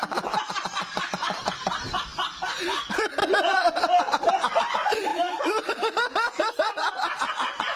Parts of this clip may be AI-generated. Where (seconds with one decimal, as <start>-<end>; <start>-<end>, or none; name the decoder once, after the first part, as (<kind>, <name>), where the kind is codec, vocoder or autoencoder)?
none